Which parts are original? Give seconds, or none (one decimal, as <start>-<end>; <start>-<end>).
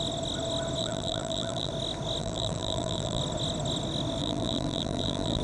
0.0-0.8; 1.7-2.2; 3.2-4.2